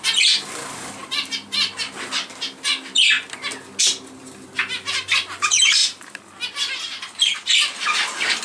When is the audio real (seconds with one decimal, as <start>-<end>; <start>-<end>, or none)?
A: 0.0-8.4